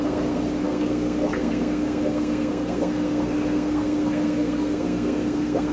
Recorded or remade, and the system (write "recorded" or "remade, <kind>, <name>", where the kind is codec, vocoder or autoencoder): remade, codec, SNAC